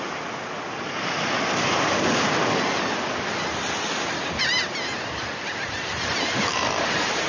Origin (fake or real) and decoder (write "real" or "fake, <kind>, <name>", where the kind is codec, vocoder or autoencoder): real